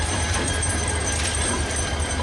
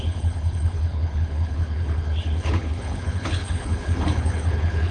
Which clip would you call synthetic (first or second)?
second